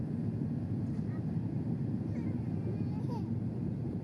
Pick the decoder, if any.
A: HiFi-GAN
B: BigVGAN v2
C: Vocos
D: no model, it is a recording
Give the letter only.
B